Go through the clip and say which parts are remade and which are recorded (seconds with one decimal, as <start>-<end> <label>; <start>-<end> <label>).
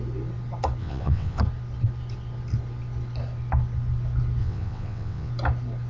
0.0-0.8 recorded; 0.8-1.4 remade; 1.4-4.4 recorded; 4.4-5.3 remade; 5.3-5.9 recorded